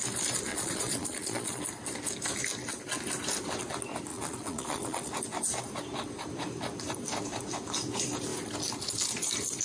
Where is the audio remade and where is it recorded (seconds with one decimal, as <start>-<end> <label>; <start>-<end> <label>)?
0.0-0.5 recorded; 0.5-1.6 remade; 1.6-4.1 recorded; 4.1-5.1 remade; 5.1-9.6 recorded